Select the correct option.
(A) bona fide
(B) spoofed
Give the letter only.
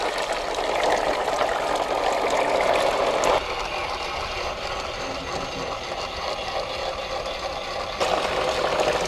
A